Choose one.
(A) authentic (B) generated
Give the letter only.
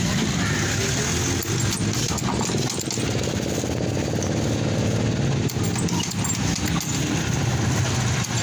A